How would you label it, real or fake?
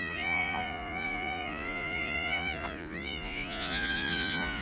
fake